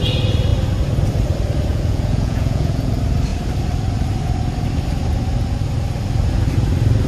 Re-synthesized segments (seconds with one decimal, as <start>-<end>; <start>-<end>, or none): 1.7-2.9